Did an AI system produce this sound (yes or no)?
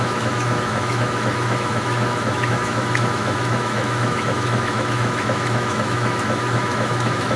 yes